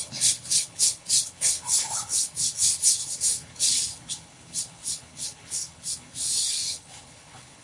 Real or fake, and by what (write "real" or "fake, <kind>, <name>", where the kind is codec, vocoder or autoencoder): fake, codec, HILCodec